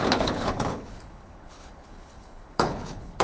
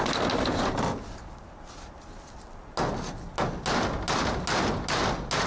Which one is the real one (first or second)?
second